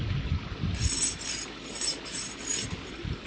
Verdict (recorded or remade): recorded